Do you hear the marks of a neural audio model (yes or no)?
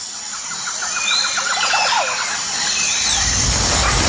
no